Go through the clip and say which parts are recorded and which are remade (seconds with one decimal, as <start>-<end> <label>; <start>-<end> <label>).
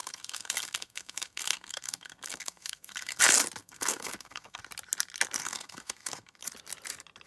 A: 0.0-3.2 remade; 3.2-3.6 recorded; 3.6-4.6 remade; 4.6-5.4 recorded; 5.4-6.4 remade; 6.4-7.3 recorded